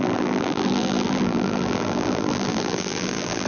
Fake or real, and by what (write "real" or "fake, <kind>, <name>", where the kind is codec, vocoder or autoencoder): fake, vocoder, BigVGAN v2